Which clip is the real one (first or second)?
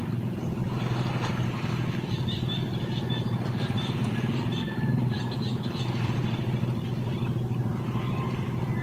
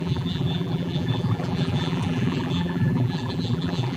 first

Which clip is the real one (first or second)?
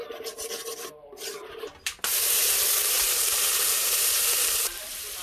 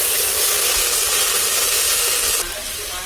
second